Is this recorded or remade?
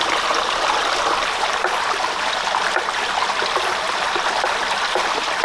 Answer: recorded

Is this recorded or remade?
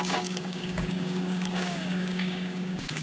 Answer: remade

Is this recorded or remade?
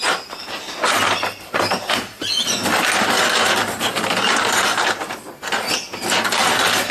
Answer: recorded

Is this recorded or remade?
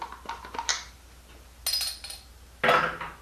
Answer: recorded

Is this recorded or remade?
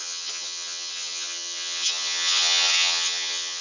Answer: remade